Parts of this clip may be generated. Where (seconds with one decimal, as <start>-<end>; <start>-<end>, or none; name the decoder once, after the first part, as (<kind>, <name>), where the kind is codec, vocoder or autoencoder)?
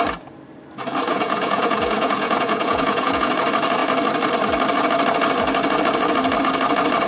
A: 1.1-3.3 (vocoder, Vocos)